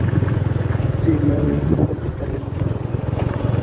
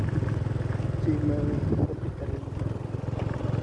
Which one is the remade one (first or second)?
first